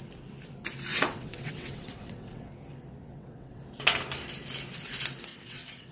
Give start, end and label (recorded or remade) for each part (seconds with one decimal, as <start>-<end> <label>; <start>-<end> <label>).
0.0-0.9 recorded; 0.9-2.5 remade; 2.5-3.1 recorded; 3.1-3.6 remade; 3.6-5.3 recorded; 5.3-5.9 remade

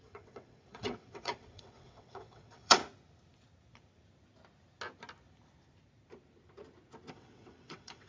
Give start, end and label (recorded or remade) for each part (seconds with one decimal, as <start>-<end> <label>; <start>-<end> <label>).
0.0-2.8 remade; 2.8-7.1 recorded; 7.1-8.1 remade

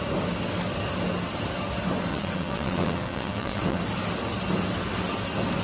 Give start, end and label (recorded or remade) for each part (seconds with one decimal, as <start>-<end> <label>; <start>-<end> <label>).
0.0-2.1 recorded; 2.1-3.8 remade; 3.8-5.6 recorded

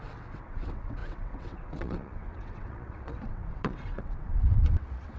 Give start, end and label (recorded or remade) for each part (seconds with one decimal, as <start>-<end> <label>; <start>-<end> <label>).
0.0-5.2 remade

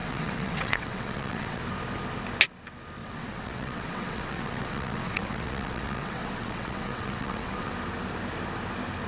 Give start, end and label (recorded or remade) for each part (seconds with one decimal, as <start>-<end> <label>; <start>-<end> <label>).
0.0-1.6 remade; 1.6-3.0 recorded; 3.0-7.7 remade; 7.7-9.1 recorded

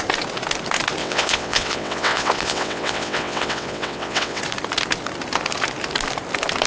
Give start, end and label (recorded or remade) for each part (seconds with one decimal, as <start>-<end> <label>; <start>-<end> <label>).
0.0-1.0 recorded; 1.0-4.4 remade; 4.4-6.7 recorded